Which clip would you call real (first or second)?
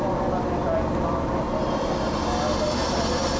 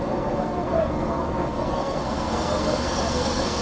first